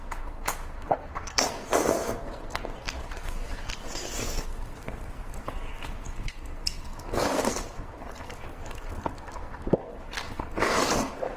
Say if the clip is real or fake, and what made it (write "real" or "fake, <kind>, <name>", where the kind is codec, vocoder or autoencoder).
fake, codec, SNAC